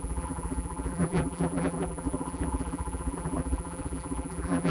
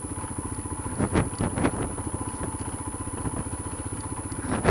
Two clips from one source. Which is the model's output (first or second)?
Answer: first